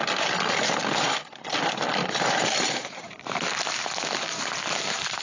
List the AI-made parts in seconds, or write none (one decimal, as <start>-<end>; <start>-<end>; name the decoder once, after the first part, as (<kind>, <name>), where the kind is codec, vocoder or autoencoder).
2.0-4.4 (vocoder, BigVGAN v2)

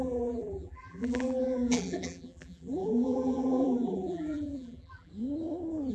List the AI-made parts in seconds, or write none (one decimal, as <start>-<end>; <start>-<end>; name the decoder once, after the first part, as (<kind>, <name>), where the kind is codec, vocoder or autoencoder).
0.0-5.1 (vocoder, BigVGAN v2)

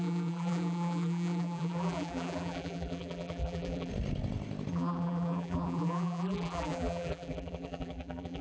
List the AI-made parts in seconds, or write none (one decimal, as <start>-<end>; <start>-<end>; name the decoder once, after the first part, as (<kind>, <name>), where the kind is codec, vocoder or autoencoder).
0.0-3.9 (vocoder, BigVGAN v2); 4.7-8.4

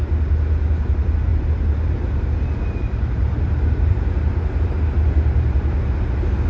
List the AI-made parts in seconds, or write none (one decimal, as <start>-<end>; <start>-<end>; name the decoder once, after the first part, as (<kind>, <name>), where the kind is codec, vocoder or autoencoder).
1.3-4.8 (vocoder, BigVGAN v2)